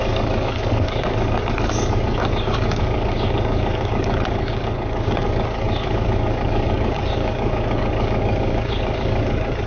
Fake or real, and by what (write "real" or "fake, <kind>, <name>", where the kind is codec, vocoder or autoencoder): fake, codec, DAC